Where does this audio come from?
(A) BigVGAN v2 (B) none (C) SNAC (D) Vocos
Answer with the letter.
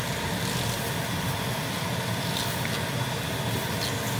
B